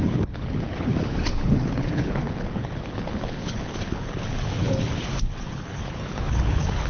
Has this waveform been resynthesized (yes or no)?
yes